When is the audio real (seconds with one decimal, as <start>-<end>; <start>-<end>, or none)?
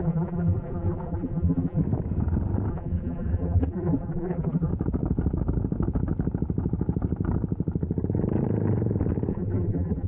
1.8-2.7; 4.7-9.3